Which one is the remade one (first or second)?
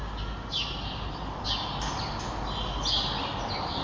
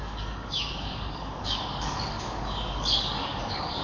second